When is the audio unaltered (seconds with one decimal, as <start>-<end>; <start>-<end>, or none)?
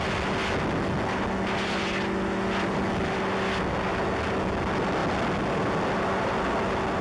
0.0-7.0